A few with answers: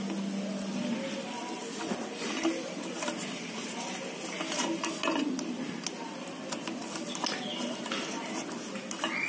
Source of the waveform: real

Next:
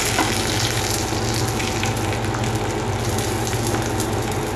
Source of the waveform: real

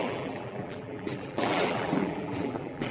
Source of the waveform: fake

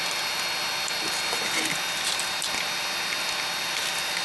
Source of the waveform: real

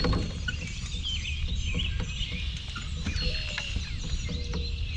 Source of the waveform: real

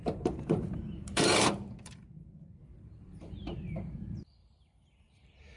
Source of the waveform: fake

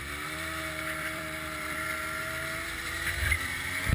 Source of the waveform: fake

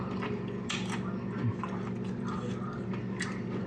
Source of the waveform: fake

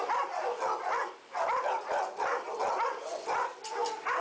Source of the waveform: real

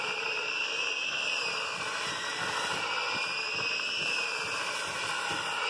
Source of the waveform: fake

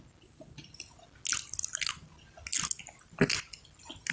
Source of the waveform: real